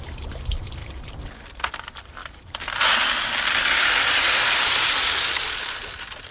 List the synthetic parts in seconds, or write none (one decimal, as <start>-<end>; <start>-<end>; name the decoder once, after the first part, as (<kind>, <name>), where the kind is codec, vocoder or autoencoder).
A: none